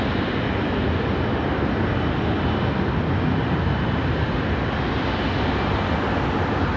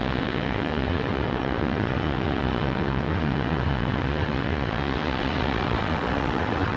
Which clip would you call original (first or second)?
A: first